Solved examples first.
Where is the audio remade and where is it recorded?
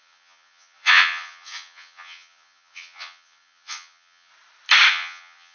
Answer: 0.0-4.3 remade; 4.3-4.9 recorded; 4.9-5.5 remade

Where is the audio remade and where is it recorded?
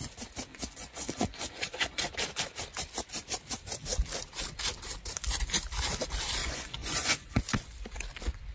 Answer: 0.0-0.5 recorded; 0.5-2.1 remade; 2.1-6.4 recorded; 6.4-7.4 remade; 7.4-8.5 recorded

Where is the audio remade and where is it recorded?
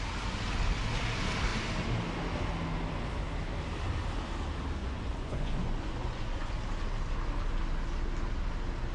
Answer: 0.0-4.8 recorded; 4.8-6.6 remade; 6.6-8.9 recorded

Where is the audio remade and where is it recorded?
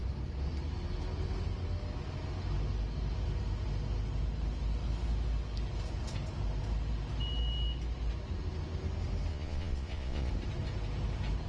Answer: 0.0-9.3 recorded; 9.3-10.3 remade; 10.3-11.5 recorded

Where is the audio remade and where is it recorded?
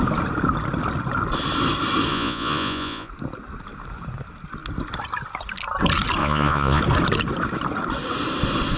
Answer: 0.0-2.1 recorded; 2.1-3.1 remade; 3.1-6.2 recorded; 6.2-6.8 remade; 6.8-8.8 recorded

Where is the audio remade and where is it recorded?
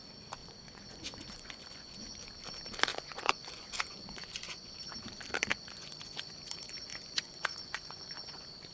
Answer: 0.0-0.4 recorded; 0.4-2.3 remade; 2.3-2.9 recorded; 2.9-4.8 remade; 4.8-5.5 recorded; 5.5-6.3 remade; 6.3-6.9 recorded; 6.9-8.7 remade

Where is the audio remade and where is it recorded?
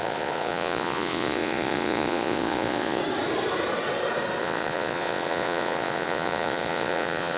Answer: 0.0-3.0 remade; 3.0-4.4 recorded; 4.4-7.4 remade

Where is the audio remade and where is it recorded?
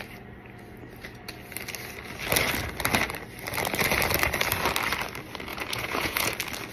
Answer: 0.0-5.5 recorded; 5.5-6.3 remade; 6.3-6.7 recorded